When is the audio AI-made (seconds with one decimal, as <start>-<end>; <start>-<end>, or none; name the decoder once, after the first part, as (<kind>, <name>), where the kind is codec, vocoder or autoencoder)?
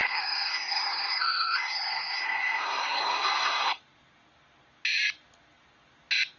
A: 0.0-3.8 (codec, SNAC)